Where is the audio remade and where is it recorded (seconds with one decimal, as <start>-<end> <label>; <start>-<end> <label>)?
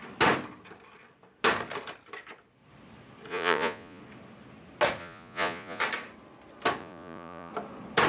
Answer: 0.0-3.3 recorded; 3.3-4.0 remade; 4.0-5.0 recorded; 5.0-5.8 remade; 5.8-6.8 recorded; 6.8-7.5 remade; 7.5-8.1 recorded